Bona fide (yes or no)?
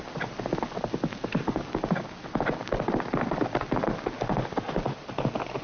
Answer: yes